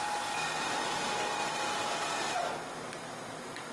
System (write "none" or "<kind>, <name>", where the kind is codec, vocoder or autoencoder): none